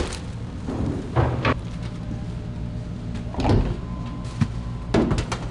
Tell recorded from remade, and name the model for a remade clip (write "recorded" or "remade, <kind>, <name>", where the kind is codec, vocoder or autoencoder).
recorded